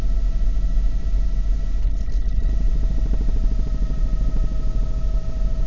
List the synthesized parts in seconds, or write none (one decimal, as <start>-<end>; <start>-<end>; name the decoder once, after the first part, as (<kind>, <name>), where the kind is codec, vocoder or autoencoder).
1.8-2.5 (codec, HILCodec)